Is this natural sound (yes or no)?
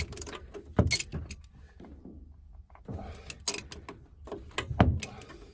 yes